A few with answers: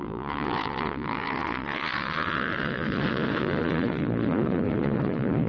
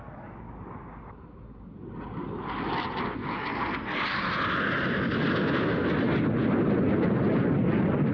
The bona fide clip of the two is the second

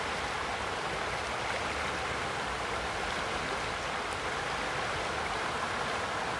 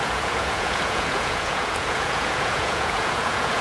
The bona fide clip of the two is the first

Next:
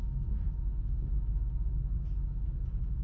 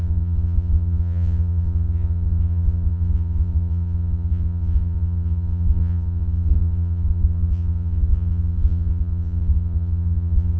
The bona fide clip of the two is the first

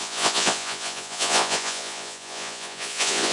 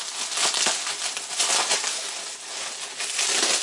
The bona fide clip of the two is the second